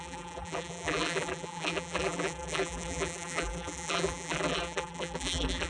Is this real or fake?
fake